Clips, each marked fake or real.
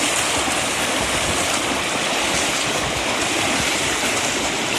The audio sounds real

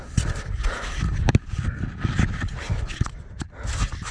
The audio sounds real